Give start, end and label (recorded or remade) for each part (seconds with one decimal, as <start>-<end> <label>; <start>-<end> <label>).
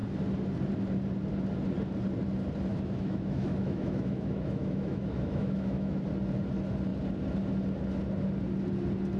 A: 0.0-2.7 recorded; 2.7-6.0 remade; 6.0-9.2 recorded